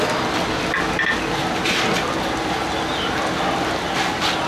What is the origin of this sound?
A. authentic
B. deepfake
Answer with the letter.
A